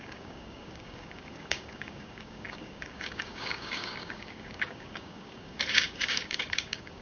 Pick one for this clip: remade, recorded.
remade